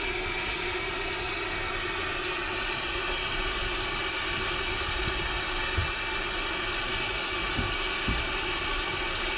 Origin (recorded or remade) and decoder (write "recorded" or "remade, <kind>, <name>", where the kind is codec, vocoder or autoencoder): recorded